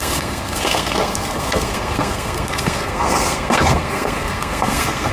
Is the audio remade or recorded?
remade